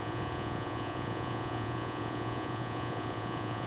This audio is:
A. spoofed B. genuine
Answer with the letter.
A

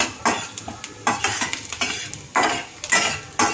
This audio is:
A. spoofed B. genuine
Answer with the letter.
B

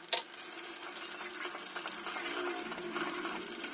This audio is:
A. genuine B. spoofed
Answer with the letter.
A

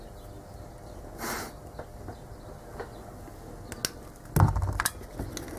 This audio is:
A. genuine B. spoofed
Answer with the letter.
A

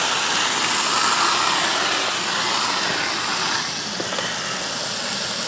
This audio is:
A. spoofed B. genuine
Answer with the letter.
B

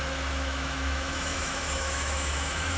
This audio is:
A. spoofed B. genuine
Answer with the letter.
A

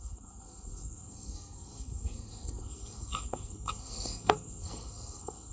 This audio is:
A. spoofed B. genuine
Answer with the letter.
A